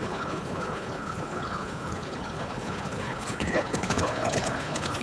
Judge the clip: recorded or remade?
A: remade